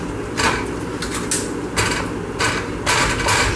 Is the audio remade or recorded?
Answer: recorded